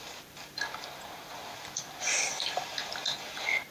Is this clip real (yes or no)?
no